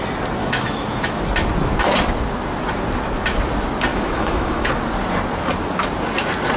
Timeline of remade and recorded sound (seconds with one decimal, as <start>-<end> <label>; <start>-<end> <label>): 0.0-0.4 recorded; 0.4-1.2 remade; 1.2-3.9 recorded; 3.9-4.7 remade; 4.7-6.6 recorded